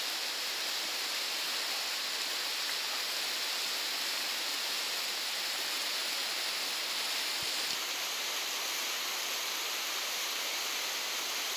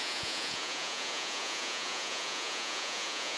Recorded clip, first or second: first